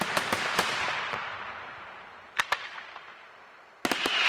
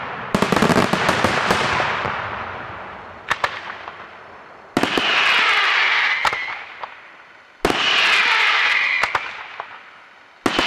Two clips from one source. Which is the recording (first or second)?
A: second